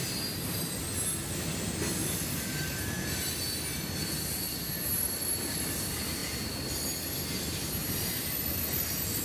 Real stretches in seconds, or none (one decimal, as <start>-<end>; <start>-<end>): 0.9-7.8